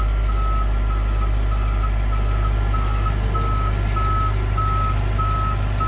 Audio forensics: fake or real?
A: real